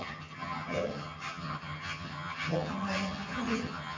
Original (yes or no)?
no